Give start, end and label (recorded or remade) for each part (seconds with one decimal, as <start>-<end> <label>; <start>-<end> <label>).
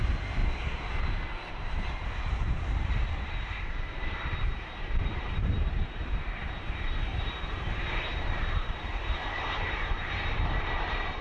0.0-0.4 remade; 0.4-1.5 recorded; 1.5-11.2 remade